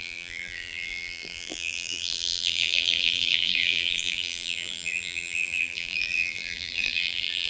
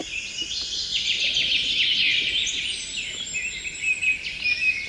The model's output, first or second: first